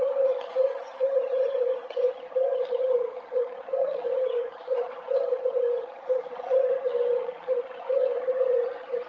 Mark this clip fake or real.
fake